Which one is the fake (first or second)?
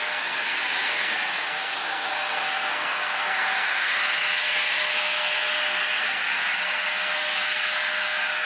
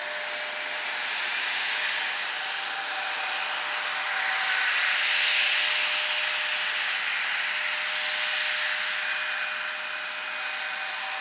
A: first